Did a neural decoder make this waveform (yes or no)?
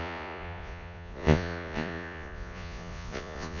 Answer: yes